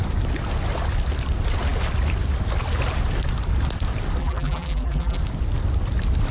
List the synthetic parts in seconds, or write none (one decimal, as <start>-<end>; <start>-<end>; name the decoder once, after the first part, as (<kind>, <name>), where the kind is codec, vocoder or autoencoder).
4.2-5.2 (vocoder, BigVGAN v2)